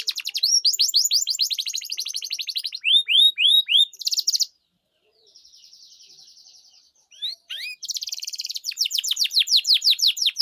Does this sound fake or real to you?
fake